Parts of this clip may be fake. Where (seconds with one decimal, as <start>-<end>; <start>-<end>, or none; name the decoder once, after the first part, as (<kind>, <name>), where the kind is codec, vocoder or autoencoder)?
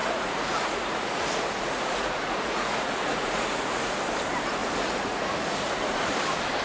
0.0-4.0 (vocoder, Vocos); 4.6-5.7